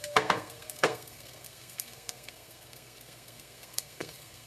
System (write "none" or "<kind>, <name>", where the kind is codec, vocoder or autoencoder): codec, SNAC